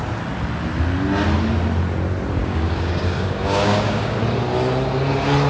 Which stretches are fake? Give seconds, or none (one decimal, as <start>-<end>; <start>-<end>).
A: 2.4-4.2